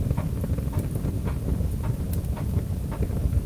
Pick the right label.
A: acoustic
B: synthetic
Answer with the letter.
A